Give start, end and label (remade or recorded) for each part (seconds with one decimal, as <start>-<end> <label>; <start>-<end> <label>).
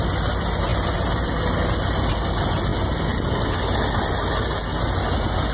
0.0-5.5 recorded